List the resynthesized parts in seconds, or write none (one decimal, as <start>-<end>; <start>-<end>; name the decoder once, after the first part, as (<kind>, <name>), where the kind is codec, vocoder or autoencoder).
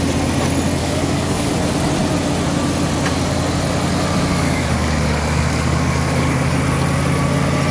0.8-1.5 (codec, DAC); 4.3-6.5